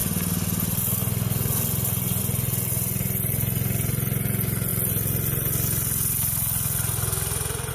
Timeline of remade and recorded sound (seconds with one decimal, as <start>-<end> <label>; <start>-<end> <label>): 0.0-7.7 recorded